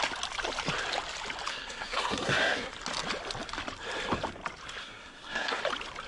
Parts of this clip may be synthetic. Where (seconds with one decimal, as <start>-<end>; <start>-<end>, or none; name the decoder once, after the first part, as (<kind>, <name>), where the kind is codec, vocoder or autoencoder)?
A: 1.5-2.7 (codec, SNAC); 4.8-5.6